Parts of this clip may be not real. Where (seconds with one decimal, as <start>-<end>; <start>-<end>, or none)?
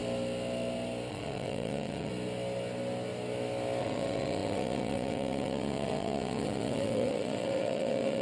1.1-2.1; 3.8-8.2